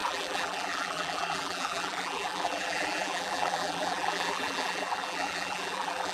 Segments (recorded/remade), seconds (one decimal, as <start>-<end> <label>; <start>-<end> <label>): 0.0-6.1 remade